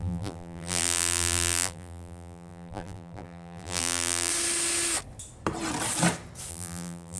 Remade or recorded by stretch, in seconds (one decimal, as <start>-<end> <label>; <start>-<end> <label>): 0.0-4.3 remade; 4.3-6.5 recorded; 6.5-7.2 remade